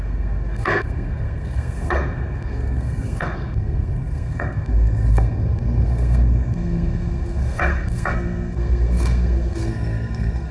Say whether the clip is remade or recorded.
remade